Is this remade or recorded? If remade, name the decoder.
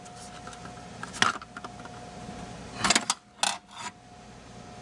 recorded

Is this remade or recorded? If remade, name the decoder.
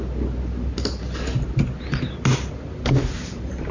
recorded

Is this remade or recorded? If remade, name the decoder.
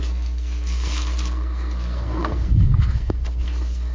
remade, codec, SNAC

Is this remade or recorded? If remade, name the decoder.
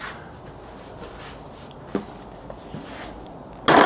recorded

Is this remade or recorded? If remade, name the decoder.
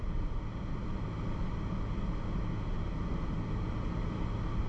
recorded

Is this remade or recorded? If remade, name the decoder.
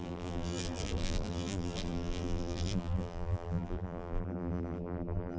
remade, vocoder, BigVGAN v2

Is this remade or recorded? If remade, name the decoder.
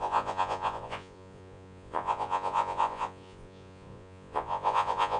remade, vocoder, Vocos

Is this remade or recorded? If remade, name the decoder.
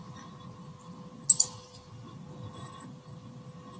recorded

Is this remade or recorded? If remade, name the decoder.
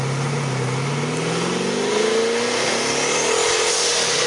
recorded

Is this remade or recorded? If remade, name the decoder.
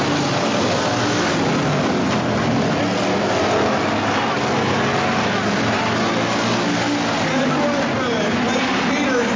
recorded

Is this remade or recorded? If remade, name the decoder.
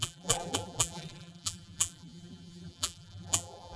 remade, vocoder, BigVGAN v2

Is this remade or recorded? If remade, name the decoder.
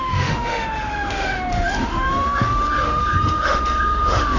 remade, autoencoder, DAC-VAE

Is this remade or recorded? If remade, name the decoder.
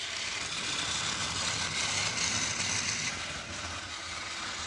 recorded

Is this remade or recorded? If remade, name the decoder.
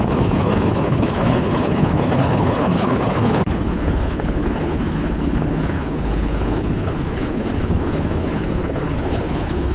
remade, codec, HILCodec